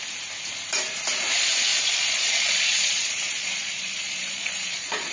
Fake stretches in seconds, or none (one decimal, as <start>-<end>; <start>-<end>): 1.7-5.1